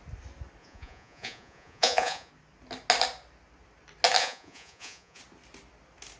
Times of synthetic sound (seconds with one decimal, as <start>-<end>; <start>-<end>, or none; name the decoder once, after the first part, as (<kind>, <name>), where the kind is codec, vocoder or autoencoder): 0.6-2.3 (vocoder, Vocos); 4.2-5.2